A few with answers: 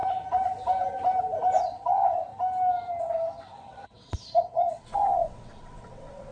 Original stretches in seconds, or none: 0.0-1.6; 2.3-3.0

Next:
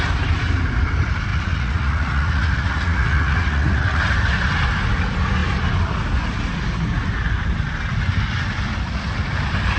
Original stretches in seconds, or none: 0.0-1.3; 4.0-9.8

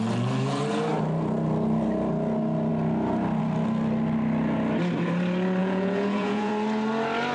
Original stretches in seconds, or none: 0.0-5.6; 6.5-7.3

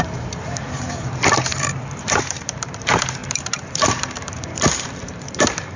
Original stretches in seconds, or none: 1.2-2.3

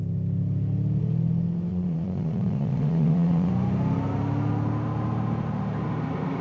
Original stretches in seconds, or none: 0.0-1.7; 3.5-6.4

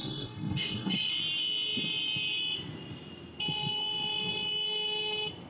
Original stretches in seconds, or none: 1.1-5.5

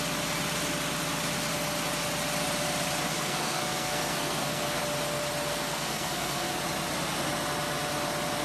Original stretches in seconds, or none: 0.0-3.1; 4.8-5.5; 6.5-8.4

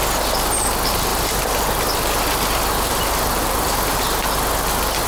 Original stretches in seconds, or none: 0.0-1.1; 4.2-5.1